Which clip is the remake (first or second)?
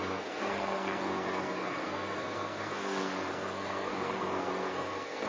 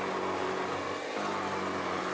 first